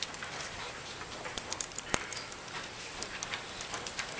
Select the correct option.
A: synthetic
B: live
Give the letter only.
A